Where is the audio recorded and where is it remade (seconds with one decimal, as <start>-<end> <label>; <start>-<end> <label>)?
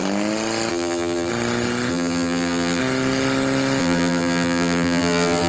0.0-0.7 recorded; 0.7-1.3 remade; 1.3-1.9 recorded; 1.9-2.8 remade; 2.8-3.8 recorded; 3.8-5.5 remade